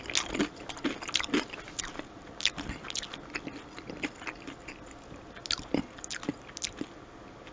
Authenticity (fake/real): real